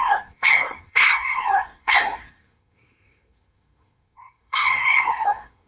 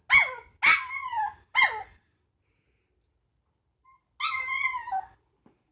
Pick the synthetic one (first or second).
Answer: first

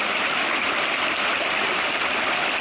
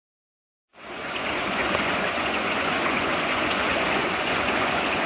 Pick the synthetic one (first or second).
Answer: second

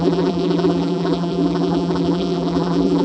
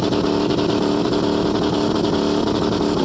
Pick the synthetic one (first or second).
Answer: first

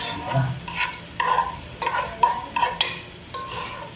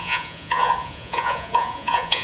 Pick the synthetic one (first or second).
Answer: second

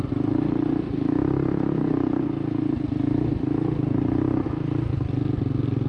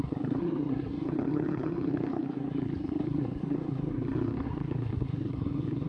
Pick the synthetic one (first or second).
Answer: second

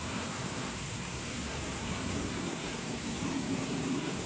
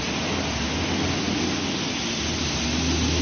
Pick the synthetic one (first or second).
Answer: first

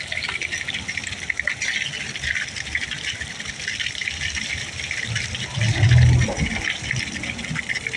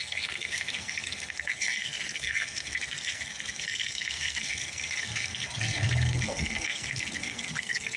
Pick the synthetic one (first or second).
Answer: second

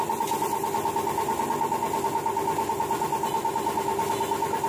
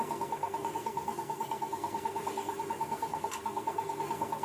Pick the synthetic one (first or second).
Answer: second